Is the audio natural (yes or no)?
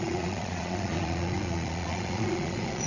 no